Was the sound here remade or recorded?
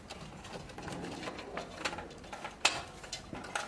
recorded